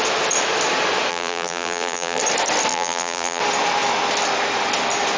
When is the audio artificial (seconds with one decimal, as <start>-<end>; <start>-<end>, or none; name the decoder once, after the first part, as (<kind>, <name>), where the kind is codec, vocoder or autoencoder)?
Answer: 1.1-2.2 (vocoder, BigVGAN v2); 2.7-3.4